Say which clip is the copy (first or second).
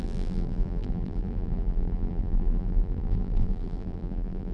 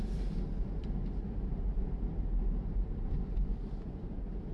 first